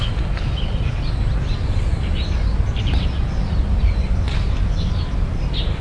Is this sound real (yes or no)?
yes